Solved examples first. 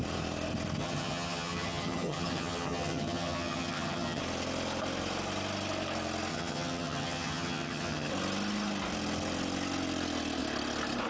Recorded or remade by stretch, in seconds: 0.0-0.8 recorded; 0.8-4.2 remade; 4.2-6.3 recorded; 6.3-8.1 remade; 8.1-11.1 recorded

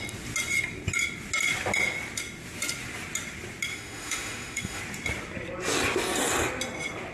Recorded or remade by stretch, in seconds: 0.0-3.7 recorded; 3.7-4.8 remade; 4.8-7.1 recorded

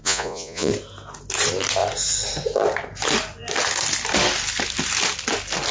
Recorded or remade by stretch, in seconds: 0.0-0.7 remade; 0.7-5.7 recorded